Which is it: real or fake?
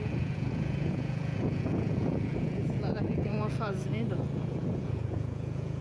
fake